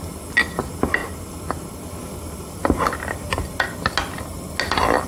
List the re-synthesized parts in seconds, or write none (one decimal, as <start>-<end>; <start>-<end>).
none